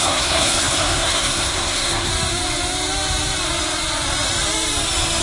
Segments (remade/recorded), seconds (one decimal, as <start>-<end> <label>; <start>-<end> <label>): 0.0-2.1 remade; 2.1-5.2 recorded